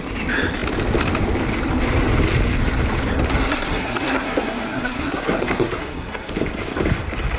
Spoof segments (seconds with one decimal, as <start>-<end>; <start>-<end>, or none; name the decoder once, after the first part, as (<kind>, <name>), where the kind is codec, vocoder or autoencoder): 3.5-6.3 (codec, SNAC)